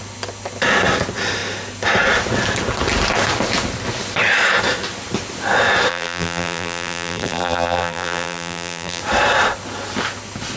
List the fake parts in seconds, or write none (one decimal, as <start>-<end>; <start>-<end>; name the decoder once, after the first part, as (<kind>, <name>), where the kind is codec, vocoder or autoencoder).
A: 5.9-9.0 (vocoder, BigVGAN v2)